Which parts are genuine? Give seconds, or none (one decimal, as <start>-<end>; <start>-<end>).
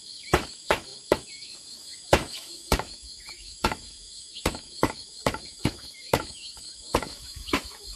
none